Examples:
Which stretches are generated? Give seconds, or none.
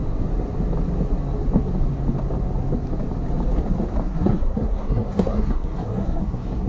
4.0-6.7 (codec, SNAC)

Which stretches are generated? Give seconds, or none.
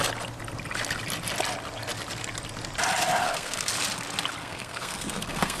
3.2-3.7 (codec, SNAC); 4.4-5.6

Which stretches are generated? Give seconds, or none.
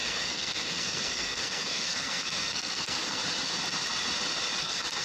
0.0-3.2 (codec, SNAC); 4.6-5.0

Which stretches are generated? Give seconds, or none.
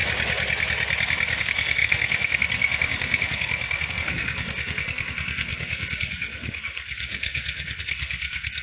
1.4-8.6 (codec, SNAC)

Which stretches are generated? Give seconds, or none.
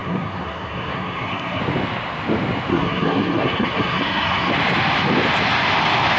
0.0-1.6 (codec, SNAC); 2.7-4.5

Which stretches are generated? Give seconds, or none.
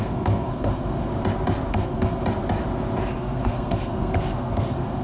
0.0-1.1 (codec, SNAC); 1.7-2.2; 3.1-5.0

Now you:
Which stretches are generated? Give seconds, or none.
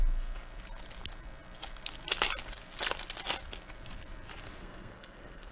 4.6-5.5 (codec, SNAC)